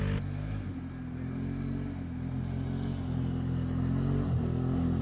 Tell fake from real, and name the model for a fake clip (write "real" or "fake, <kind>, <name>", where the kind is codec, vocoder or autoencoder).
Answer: real